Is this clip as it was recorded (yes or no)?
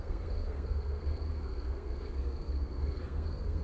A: no